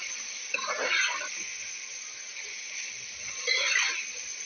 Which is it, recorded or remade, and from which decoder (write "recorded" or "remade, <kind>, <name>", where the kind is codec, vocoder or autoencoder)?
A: recorded